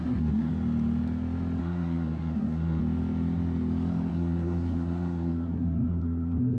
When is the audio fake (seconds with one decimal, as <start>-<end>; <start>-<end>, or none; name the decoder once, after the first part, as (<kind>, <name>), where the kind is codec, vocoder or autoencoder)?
0.0-0.5 (codec, SNAC); 1.6-2.8; 4.1-6.6

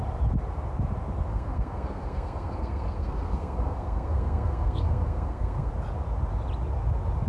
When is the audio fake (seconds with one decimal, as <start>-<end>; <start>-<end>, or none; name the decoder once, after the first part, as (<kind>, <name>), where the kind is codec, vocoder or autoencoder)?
1.3-5.7 (codec, SNAC)

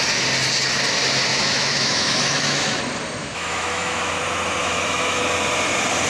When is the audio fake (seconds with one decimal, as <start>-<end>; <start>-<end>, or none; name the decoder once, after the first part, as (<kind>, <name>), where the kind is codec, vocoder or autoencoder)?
1.3-2.8 (autoencoder, DAC-VAE); 3.2-4.1; 4.6-5.2

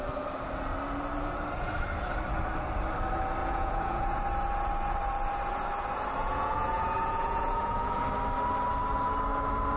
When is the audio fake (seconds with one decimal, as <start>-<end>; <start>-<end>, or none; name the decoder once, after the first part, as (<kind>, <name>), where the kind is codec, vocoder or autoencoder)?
3.4-4.2 (vocoder, Vocos); 6.2-8.0

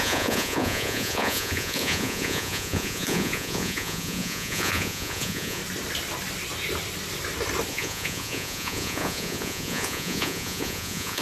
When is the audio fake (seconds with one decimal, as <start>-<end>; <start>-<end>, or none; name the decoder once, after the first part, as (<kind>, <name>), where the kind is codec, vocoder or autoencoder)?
0.0-5.6 (vocoder, Vocos); 7.7-11.2

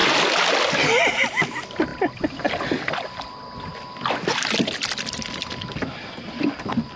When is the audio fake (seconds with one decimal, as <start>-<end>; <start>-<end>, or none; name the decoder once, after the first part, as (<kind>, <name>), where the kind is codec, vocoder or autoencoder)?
none